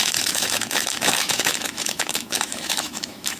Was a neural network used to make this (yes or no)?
yes